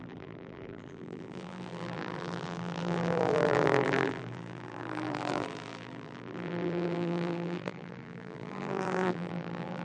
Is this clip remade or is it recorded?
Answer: remade